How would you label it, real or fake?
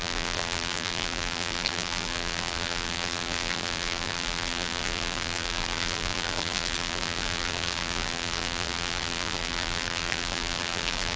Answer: fake